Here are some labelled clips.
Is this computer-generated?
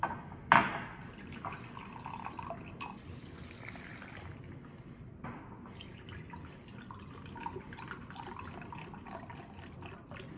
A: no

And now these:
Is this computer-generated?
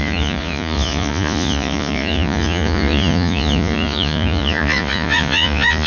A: yes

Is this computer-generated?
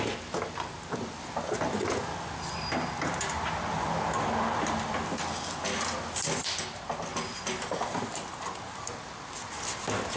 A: no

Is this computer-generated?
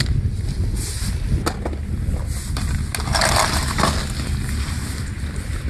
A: no